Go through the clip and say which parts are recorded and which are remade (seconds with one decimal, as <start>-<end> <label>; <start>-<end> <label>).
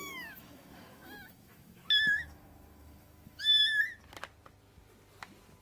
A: 0.0-3.4 remade; 3.4-5.6 recorded